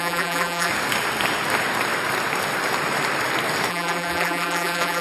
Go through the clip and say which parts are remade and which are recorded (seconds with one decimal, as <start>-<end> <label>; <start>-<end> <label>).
0.0-0.7 remade; 0.7-3.7 recorded; 3.7-5.0 remade